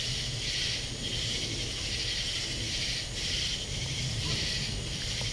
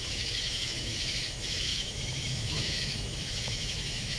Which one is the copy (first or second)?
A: second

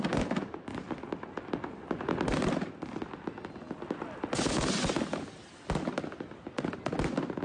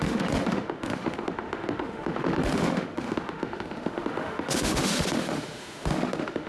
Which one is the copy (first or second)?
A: second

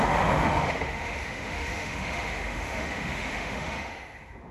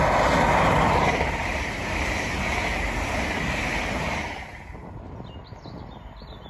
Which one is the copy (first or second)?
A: first